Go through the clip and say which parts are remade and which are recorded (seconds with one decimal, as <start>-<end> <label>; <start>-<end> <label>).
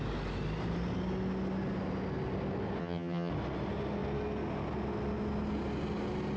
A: 0.0-2.8 recorded; 2.8-3.3 remade; 3.3-6.4 recorded